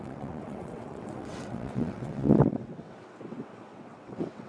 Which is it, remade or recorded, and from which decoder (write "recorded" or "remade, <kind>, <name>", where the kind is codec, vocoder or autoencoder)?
remade, vocoder, WaveNeXt